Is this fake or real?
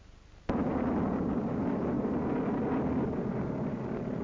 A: real